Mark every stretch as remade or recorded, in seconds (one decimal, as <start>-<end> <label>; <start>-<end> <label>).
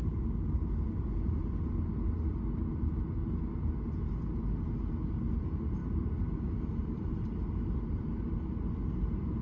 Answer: 0.0-5.8 recorded; 5.8-7.1 remade; 7.1-9.4 recorded